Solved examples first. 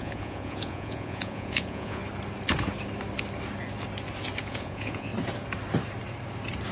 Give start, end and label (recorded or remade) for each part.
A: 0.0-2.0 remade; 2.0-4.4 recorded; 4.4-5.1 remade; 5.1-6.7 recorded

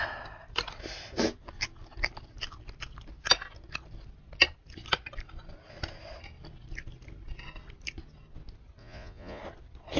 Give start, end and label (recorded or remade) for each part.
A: 0.0-8.8 recorded; 8.8-9.4 remade; 9.4-10.0 recorded

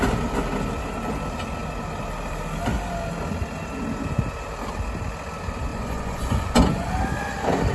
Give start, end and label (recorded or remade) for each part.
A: 0.0-5.7 recorded; 5.7-6.9 remade; 6.9-7.7 recorded

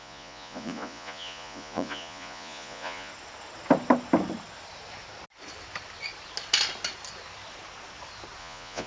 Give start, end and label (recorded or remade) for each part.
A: 0.0-3.1 remade; 3.1-8.4 recorded; 8.4-8.9 remade

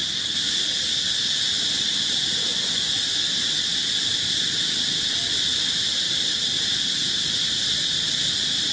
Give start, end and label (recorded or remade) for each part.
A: 0.0-2.5 recorded; 2.5-3.0 remade; 3.0-8.7 recorded

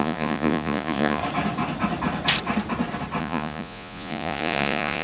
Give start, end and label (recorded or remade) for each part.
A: 0.0-1.2 remade; 1.2-3.2 recorded; 3.2-5.0 remade

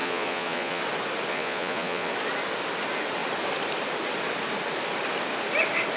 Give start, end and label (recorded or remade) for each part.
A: 0.0-0.8 remade; 0.8-1.3 recorded; 1.3-2.1 remade; 2.1-6.0 recorded